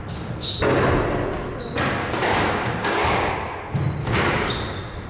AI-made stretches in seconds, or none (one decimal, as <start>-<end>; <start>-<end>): 2.0-3.3; 4.0-4.5